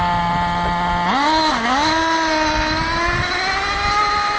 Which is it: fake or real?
real